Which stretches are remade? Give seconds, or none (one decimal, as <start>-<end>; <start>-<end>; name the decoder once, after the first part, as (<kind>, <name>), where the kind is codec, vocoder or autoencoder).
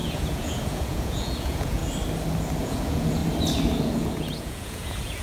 0.0-1.8 (vocoder, Vocos); 2.6-3.2; 3.8-5.2